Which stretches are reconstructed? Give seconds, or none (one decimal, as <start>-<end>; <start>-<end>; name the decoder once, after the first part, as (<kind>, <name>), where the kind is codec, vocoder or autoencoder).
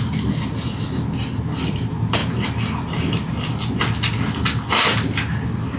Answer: none